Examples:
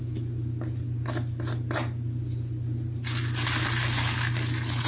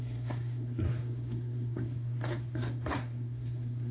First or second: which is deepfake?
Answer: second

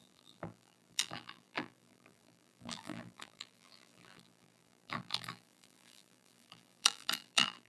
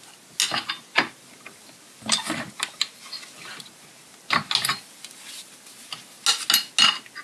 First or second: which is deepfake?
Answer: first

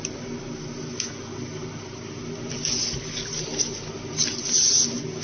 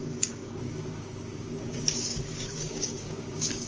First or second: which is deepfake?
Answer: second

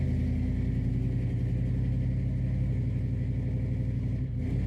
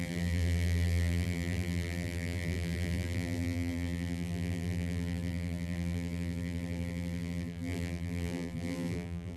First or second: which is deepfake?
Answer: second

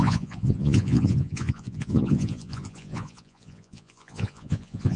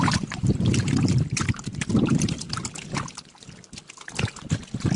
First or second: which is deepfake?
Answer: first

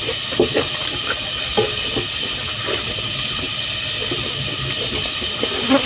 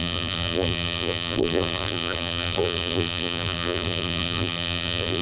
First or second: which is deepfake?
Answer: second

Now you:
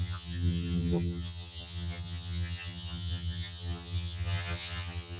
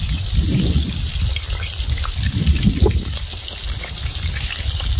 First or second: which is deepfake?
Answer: first